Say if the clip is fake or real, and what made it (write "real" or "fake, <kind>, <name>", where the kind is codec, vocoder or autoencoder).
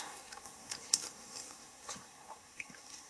fake, codec, SNAC